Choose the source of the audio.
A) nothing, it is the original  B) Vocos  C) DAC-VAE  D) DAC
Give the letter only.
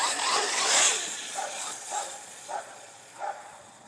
B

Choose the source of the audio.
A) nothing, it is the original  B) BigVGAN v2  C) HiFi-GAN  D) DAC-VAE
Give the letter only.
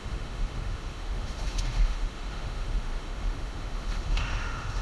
D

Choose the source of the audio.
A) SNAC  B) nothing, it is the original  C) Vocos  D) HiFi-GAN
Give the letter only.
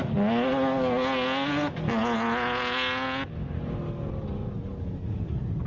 B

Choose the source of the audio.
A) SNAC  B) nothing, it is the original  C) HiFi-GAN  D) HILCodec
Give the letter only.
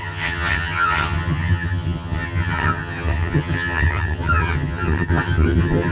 C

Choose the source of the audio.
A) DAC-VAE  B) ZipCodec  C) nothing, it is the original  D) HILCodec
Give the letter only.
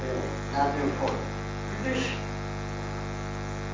C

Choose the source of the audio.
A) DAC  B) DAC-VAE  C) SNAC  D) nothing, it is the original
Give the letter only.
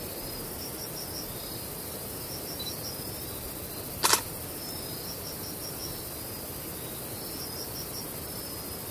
D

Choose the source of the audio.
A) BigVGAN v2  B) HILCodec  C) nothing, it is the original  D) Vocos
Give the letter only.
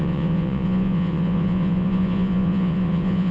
D